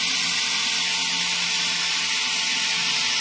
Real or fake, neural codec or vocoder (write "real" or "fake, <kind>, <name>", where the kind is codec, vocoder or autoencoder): real